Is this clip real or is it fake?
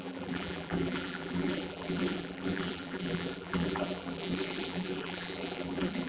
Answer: fake